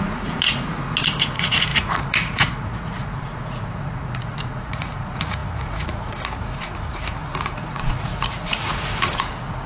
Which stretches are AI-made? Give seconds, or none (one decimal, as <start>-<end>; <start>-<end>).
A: 0.0-9.7